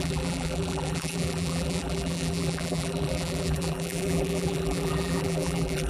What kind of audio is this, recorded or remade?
remade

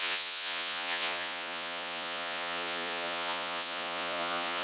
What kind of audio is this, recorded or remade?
remade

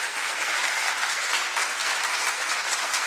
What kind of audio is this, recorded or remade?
remade